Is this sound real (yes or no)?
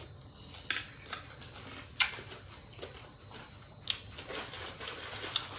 yes